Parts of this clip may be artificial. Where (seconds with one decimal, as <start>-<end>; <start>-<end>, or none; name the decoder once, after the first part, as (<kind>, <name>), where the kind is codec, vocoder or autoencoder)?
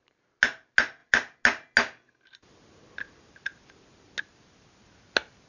none